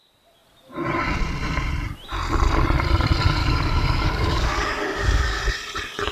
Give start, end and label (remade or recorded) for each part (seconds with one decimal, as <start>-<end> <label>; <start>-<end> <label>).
0.0-3.4 recorded; 3.4-5.4 remade; 5.4-6.1 recorded